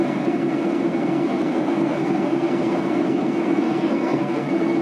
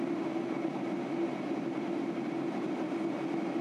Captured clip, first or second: second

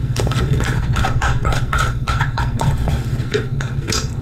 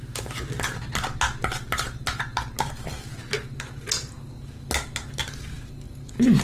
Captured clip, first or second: second